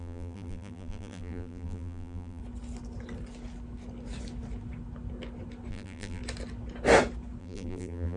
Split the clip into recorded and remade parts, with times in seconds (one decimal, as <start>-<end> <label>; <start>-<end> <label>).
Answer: 0.0-2.4 remade; 2.4-5.7 recorded; 5.7-6.2 remade; 6.2-7.4 recorded; 7.4-8.2 remade